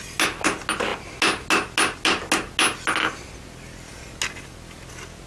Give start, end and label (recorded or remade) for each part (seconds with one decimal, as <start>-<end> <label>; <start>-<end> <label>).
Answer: 0.0-5.3 recorded